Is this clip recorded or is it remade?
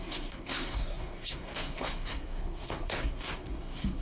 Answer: remade